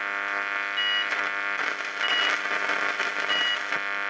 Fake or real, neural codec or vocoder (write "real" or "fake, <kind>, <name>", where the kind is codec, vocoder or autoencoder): real